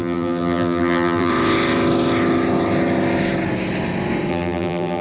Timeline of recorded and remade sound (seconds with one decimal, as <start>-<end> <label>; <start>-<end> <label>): 0.0-1.3 remade; 1.3-4.3 recorded; 4.3-5.0 remade